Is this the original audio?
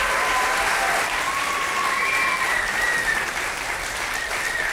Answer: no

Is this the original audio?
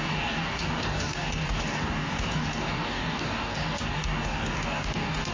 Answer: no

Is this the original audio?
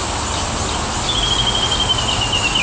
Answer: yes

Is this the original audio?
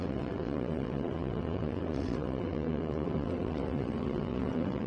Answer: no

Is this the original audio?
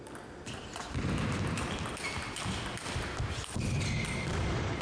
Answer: yes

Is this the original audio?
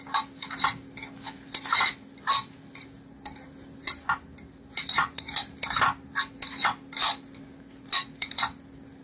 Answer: yes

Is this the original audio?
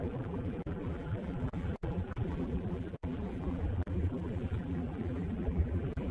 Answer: no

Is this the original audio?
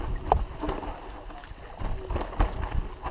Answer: yes